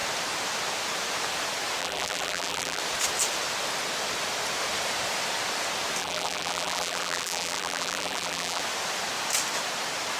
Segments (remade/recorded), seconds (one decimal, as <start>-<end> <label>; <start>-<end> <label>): 0.0-1.8 recorded; 1.8-2.8 remade; 2.8-6.0 recorded; 6.0-8.6 remade; 8.6-10.2 recorded